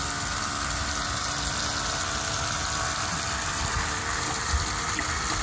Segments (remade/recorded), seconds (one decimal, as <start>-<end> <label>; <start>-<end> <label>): 0.0-5.4 recorded